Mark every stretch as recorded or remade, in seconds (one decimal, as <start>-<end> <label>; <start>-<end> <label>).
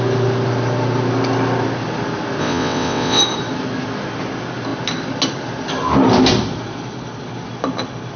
0.0-2.4 recorded; 2.4-3.2 remade; 3.2-8.2 recorded